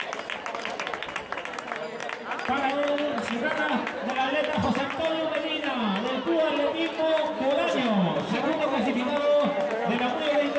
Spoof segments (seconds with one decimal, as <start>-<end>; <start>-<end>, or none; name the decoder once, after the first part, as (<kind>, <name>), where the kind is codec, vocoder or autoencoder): none